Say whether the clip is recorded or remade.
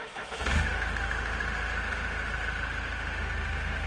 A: remade